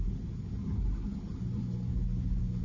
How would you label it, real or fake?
real